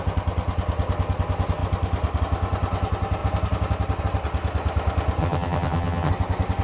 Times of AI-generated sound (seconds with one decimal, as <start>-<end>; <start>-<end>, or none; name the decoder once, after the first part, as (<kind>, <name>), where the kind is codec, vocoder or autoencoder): 5.2-6.1 (vocoder, HiFi-GAN)